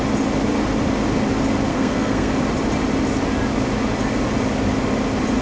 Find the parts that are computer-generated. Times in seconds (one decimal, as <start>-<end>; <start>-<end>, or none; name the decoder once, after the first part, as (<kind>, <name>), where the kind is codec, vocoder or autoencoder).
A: 1.7-2.3 (codec, SNAC)